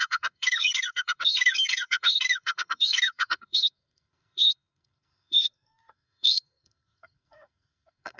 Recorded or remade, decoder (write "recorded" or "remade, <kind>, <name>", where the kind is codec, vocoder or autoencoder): remade, codec, SNAC